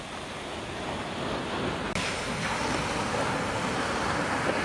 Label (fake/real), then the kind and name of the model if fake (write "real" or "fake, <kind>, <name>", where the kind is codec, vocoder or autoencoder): real